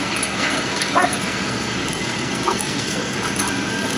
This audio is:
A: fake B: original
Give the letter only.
A